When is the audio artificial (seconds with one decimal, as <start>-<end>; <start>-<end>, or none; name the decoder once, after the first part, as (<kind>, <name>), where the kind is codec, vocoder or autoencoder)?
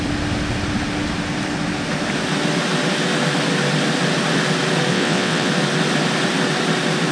4.9-5.5 (vocoder, WaveNeXt)